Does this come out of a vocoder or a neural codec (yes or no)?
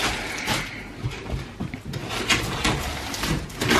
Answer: no